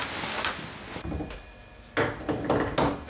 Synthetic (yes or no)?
no